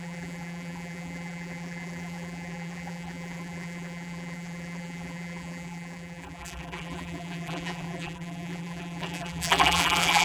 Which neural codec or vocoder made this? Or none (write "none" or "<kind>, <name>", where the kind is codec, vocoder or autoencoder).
vocoder, BigVGAN v2